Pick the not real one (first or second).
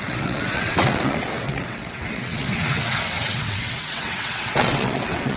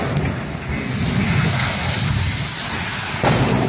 first